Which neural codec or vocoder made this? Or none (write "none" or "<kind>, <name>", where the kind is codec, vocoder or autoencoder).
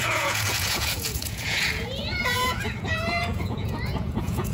vocoder, Vocos